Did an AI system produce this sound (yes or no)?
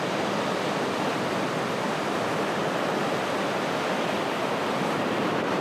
no